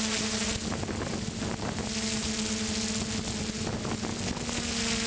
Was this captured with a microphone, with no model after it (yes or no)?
yes